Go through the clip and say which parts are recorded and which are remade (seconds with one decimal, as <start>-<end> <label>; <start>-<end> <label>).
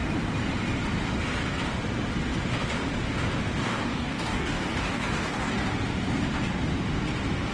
0.0-3.6 recorded; 3.6-5.5 remade; 5.5-7.5 recorded